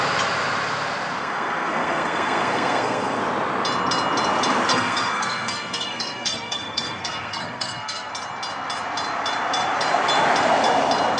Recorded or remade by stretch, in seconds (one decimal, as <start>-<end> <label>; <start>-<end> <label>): 0.0-1.2 recorded; 1.2-3.2 remade; 3.2-4.7 recorded; 4.7-8.1 remade; 8.1-11.2 recorded